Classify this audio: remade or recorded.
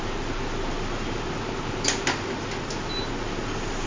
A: recorded